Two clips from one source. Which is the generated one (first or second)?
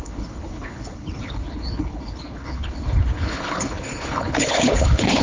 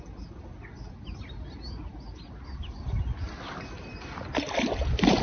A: first